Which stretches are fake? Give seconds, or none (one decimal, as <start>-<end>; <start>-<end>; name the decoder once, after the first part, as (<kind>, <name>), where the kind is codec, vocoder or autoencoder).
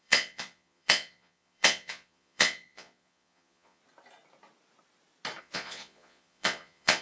0.0-3.8 (vocoder, Vocos); 5.4-7.0